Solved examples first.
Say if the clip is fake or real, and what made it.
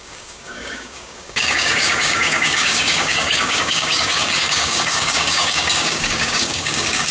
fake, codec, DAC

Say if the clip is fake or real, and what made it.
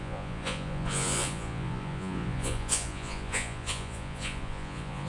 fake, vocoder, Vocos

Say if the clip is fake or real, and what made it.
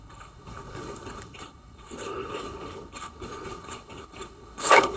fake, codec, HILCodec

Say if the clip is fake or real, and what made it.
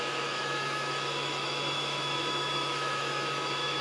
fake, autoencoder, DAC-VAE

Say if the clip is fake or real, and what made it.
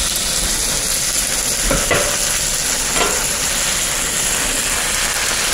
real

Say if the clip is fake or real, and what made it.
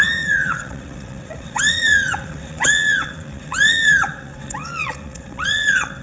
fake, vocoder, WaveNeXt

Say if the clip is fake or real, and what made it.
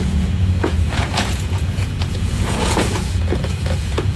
fake, vocoder, Vocos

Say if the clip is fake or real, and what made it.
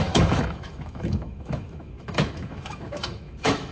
fake, autoencoder, DAC-VAE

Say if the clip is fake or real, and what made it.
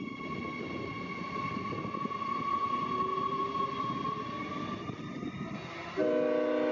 real